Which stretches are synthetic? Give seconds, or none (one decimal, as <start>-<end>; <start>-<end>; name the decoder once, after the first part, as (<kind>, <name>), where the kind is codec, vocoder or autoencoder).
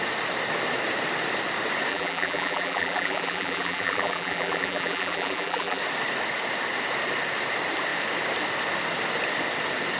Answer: 1.9-5.8 (vocoder, BigVGAN v2)